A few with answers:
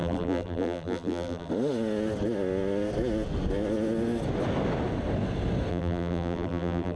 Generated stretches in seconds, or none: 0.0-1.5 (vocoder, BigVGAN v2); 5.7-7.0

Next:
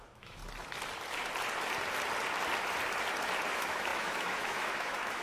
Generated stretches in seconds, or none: 0.0-0.4 (autoencoder, DAC-VAE); 3.5-5.2

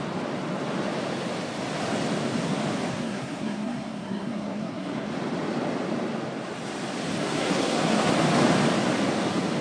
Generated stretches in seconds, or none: 2.9-5.1 (codec, SNAC); 7.2-8.1

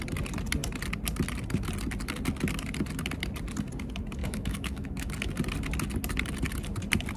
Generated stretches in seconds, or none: 4.2-5.1 (autoencoder, DAC-VAE)

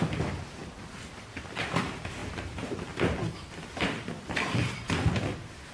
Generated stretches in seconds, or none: none

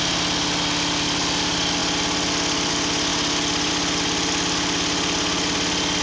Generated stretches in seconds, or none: none